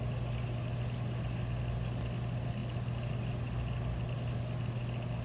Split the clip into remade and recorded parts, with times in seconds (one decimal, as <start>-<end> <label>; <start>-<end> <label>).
0.0-5.2 recorded